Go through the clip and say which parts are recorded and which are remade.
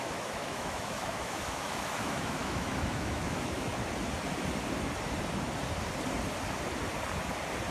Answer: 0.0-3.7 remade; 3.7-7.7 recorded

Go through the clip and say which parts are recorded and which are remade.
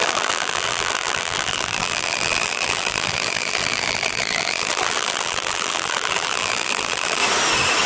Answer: 0.0-7.2 remade; 7.2-7.9 recorded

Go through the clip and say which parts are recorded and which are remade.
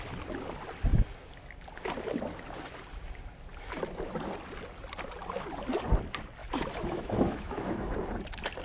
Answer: 0.0-6.4 recorded; 6.4-7.9 remade; 7.9-8.6 recorded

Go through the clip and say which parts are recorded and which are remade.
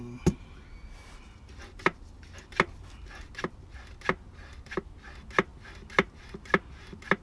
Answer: 0.0-7.2 recorded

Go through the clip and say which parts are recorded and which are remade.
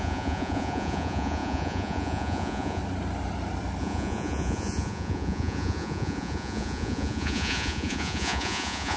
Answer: 0.0-2.8 remade; 2.8-3.8 recorded; 3.8-9.0 remade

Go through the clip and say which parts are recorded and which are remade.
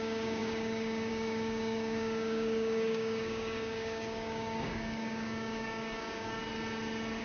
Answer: 0.0-6.4 remade; 6.4-7.2 recorded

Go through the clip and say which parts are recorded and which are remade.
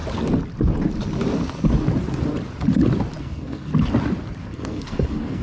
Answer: 0.0-3.2 recorded; 3.2-3.7 remade; 3.7-4.4 recorded; 4.4-5.4 remade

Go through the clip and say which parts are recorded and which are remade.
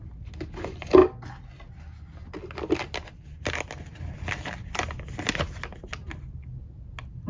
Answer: 0.0-7.3 recorded